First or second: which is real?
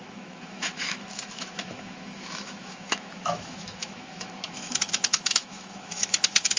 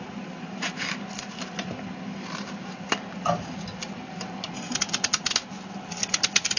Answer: second